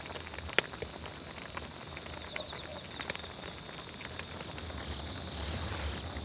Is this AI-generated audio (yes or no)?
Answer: no